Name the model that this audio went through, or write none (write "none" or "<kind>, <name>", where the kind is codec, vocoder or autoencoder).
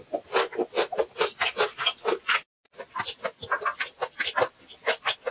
none